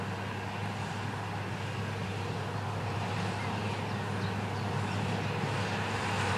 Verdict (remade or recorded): recorded